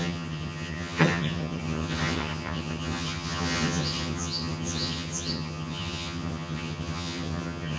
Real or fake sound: fake